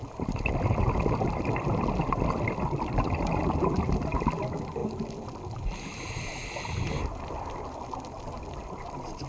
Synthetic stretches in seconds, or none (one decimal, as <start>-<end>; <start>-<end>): none